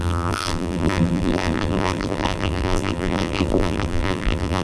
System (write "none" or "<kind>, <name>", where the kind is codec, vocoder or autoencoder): vocoder, BigVGAN v2